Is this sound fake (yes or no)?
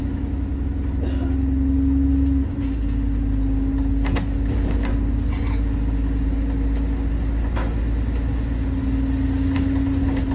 no